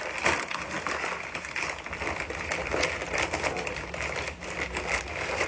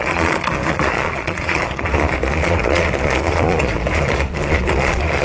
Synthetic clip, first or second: second